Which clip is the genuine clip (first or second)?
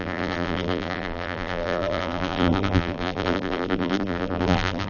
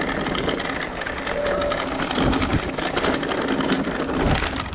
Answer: second